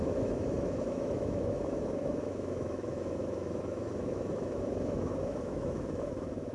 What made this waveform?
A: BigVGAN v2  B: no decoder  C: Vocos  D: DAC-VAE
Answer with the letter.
D